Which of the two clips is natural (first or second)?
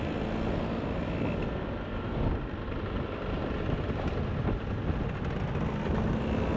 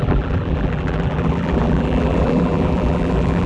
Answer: first